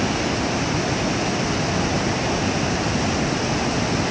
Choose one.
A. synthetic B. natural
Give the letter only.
B